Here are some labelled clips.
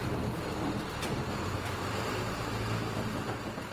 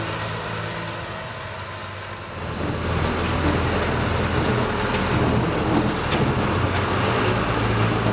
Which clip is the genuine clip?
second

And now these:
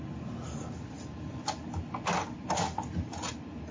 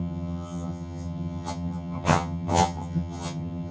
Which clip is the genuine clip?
first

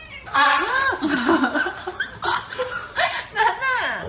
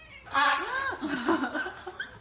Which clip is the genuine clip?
second